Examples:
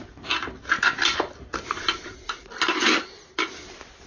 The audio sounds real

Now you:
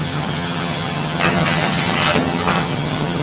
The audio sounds fake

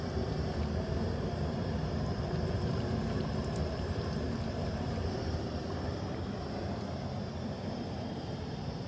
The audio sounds fake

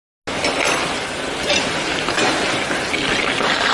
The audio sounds real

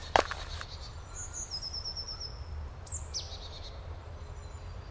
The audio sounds real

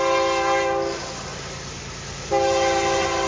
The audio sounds real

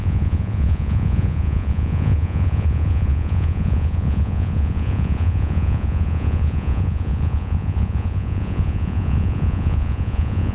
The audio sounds fake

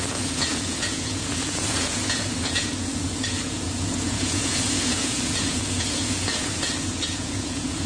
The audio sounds fake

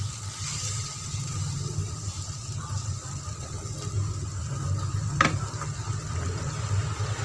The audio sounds real